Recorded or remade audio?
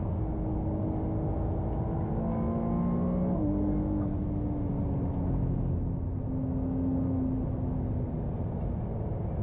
recorded